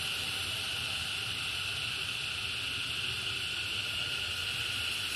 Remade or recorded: recorded